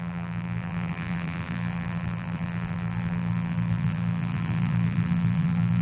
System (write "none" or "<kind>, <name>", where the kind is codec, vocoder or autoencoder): vocoder, BigVGAN v2